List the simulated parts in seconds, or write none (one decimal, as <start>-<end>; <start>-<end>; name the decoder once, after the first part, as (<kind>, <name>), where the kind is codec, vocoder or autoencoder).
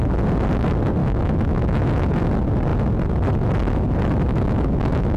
1.0-2.2 (autoencoder, DAC-VAE); 4.3-5.2